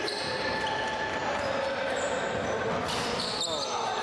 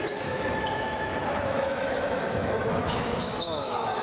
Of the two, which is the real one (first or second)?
first